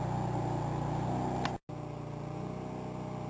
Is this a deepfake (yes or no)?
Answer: no